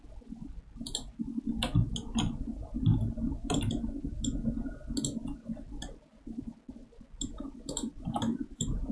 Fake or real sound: real